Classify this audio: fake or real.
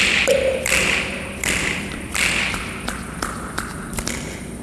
real